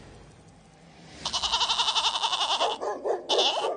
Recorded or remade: recorded